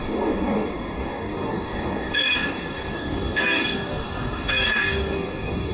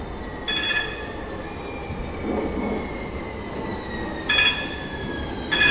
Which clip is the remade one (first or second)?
first